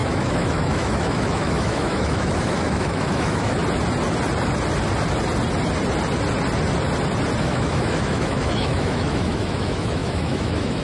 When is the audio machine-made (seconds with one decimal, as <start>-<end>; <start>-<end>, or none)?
0.0-3.6; 7.4-10.8